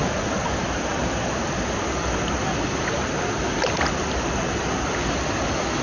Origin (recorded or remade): recorded